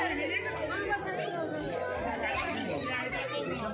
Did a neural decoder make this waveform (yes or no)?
no